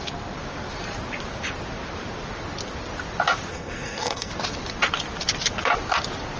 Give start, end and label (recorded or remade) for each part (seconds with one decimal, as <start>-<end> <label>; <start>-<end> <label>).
0.0-3.5 recorded; 3.5-4.3 remade; 4.3-6.4 recorded